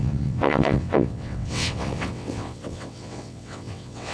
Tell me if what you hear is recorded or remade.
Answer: remade